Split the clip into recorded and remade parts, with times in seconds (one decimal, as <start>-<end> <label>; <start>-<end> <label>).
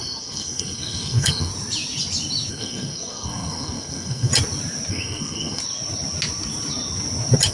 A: 0.0-1.5 remade; 1.5-2.5 recorded; 2.5-4.3 remade; 4.3-4.9 recorded; 4.9-5.6 remade; 5.6-7.5 recorded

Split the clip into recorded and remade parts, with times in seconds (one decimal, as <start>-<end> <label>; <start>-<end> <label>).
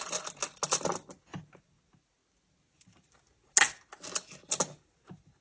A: 0.0-5.4 recorded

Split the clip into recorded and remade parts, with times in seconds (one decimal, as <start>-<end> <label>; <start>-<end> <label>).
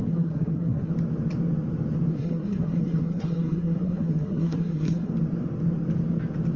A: 0.0-0.9 remade; 0.9-2.1 recorded; 2.1-5.1 remade; 5.1-6.6 recorded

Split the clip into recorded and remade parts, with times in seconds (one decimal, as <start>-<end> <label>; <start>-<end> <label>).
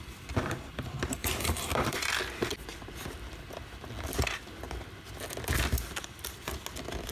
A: 0.0-1.2 recorded; 1.2-2.1 remade; 2.1-7.1 recorded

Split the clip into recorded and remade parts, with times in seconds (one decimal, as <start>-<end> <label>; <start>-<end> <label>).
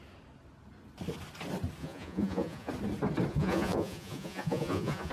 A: 0.0-1.8 recorded; 1.8-2.7 remade; 2.7-3.3 recorded; 3.3-5.1 remade